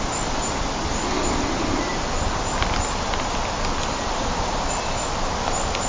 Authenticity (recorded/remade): recorded